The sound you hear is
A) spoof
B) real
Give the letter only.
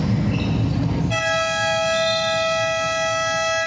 B